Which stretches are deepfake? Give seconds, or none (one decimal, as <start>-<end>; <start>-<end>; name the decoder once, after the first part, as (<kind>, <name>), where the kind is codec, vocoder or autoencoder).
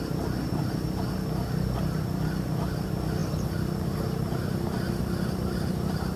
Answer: none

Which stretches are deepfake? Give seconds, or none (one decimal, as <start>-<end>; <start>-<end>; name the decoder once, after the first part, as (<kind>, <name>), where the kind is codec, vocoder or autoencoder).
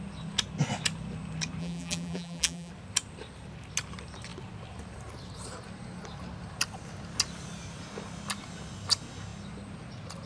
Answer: 1.6-2.7 (vocoder, BigVGAN v2)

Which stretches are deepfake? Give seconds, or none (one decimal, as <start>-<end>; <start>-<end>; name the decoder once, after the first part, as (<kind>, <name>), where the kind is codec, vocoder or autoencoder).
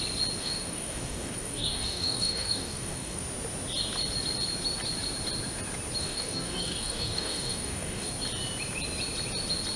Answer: 0.4-3.2 (codec, DAC); 6.0-8.1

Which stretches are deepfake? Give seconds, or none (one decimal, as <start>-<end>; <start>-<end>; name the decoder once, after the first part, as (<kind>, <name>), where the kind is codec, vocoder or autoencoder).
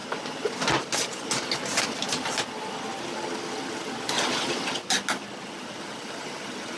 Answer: none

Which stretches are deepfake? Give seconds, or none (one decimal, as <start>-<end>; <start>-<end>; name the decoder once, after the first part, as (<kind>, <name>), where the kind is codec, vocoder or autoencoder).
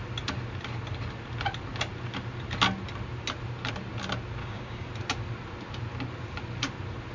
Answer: 4.4-4.9 (codec, DAC)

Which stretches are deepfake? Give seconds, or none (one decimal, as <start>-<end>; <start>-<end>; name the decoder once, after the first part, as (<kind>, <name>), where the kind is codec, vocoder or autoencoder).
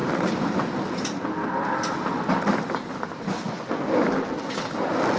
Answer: 2.9-5.2 (vocoder, BigVGAN v2)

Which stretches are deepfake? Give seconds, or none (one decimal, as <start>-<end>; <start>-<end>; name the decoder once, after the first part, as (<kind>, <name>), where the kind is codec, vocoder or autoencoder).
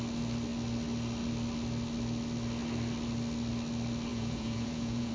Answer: 4.1-5.1 (vocoder, Vocos)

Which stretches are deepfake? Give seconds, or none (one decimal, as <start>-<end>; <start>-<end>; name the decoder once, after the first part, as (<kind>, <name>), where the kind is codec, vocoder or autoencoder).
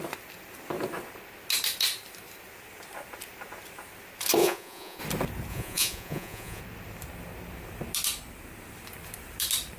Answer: 4.4-5.0 (vocoder, Vocos); 5.5-6.6